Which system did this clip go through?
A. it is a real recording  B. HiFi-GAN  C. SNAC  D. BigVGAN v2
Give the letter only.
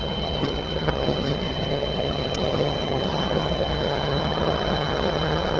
B